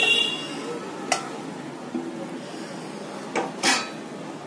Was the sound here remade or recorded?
recorded